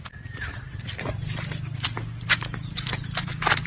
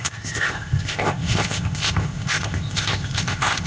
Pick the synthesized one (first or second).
second